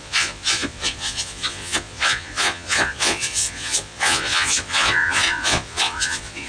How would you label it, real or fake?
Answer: fake